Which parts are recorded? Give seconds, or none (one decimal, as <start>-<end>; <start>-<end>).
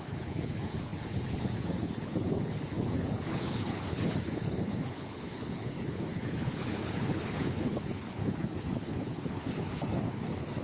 none